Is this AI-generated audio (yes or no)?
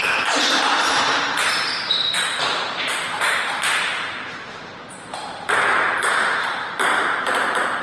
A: yes